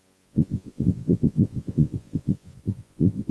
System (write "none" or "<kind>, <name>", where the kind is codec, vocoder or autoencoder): vocoder, Vocos